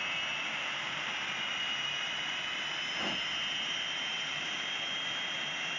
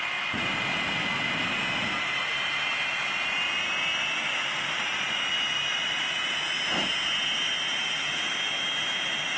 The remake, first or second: first